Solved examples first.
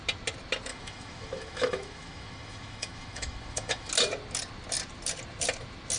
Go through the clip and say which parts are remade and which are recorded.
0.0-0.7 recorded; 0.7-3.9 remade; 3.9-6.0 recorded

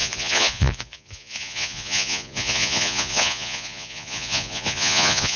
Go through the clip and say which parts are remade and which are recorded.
0.0-5.4 remade

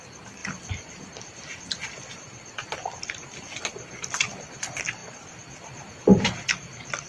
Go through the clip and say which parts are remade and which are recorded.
0.0-7.1 recorded

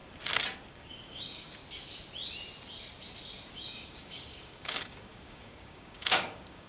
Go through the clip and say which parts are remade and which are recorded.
0.0-0.7 recorded; 0.7-1.6 remade; 1.6-3.5 recorded; 3.5-6.7 remade

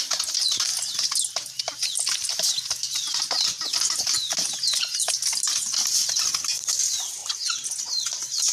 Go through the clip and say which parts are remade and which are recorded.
0.0-8.5 recorded

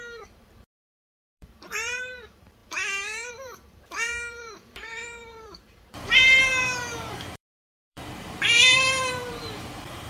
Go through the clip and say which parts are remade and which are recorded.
0.0-10.1 remade